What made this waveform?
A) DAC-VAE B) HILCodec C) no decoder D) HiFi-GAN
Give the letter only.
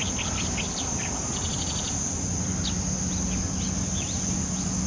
C